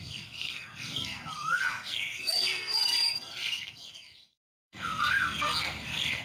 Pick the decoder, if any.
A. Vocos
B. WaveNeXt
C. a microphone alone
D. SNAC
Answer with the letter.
D